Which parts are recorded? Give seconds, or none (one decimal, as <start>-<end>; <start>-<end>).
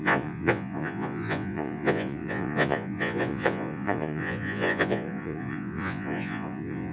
none